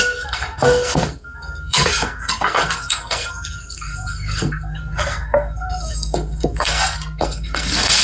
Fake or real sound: fake